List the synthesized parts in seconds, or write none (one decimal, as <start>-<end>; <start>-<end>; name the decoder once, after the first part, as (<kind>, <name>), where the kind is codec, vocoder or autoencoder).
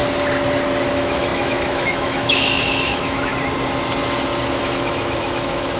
0.9-3.3 (autoencoder, DAC-VAE); 4.6-5.8